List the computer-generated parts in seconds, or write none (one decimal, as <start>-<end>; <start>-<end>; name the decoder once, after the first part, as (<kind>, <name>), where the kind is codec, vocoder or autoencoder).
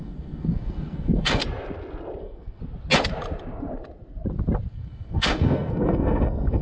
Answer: 0.0-1.4 (codec, SNAC); 2.2-2.6; 4.7-6.6